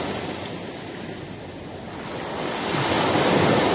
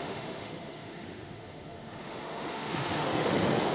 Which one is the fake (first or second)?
second